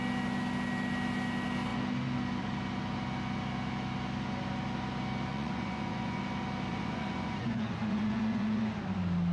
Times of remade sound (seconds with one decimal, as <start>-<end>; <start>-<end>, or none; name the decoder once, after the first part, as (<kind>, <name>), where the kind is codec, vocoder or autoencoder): 5.3-6.2 (vocoder, Vocos); 6.7-8.6

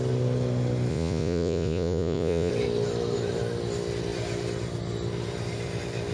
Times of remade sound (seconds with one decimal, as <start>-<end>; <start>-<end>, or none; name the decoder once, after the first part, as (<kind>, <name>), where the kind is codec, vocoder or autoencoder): 0.9-2.5 (vocoder, Vocos)